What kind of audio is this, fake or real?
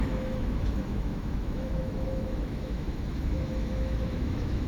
fake